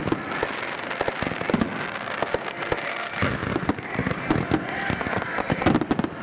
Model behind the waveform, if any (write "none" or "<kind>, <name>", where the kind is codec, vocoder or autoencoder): none